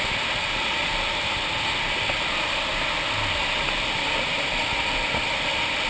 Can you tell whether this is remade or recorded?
recorded